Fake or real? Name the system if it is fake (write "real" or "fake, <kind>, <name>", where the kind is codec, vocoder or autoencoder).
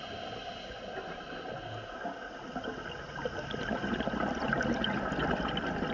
real